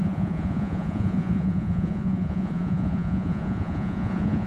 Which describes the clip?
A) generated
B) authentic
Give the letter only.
A